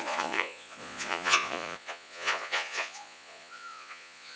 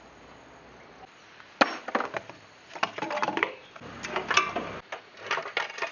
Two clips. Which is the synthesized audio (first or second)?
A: first